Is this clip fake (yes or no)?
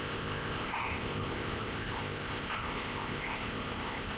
yes